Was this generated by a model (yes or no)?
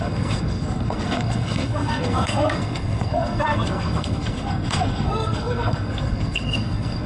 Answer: yes